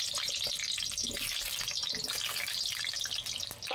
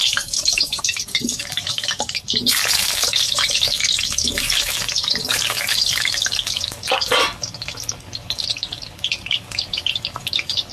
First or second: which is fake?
second